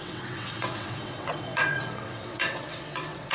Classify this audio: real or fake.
fake